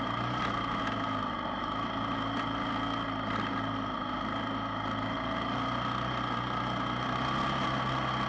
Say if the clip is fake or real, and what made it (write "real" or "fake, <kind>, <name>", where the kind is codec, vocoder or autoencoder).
real